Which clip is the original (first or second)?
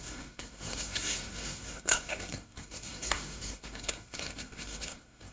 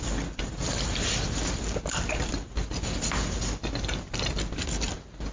second